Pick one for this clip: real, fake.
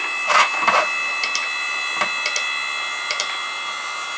real